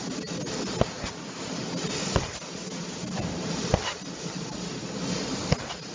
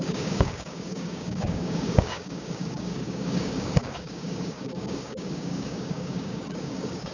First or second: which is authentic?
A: first